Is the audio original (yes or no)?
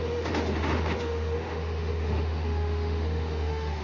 no